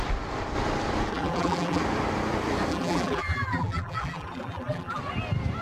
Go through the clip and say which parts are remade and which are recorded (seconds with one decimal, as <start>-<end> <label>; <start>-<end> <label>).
0.0-1.1 recorded; 1.1-1.8 remade; 1.8-2.7 recorded; 2.7-5.0 remade; 5.0-5.6 recorded